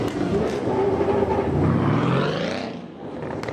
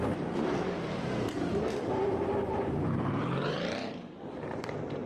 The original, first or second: first